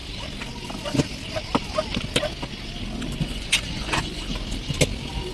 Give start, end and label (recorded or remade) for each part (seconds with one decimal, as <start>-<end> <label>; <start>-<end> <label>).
0.0-3.2 recorded; 3.2-4.3 remade; 4.3-5.3 recorded